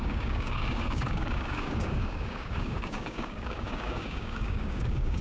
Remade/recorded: remade